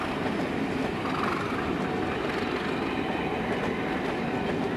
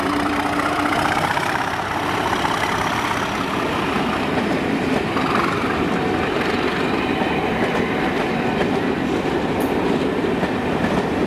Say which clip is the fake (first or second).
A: second